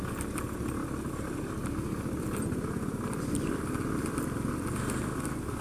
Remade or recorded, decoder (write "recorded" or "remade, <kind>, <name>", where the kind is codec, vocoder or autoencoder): remade, vocoder, BigVGAN v2